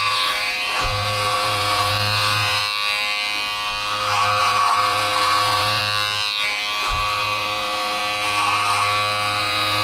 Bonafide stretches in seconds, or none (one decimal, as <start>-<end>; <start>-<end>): 2.6-4.4; 5.8-7.2; 8.0-9.4